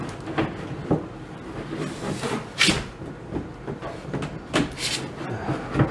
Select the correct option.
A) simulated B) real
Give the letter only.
B